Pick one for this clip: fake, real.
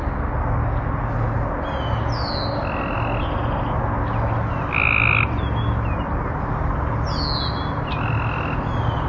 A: real